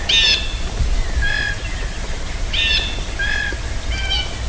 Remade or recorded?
recorded